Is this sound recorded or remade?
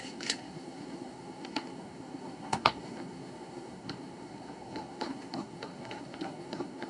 remade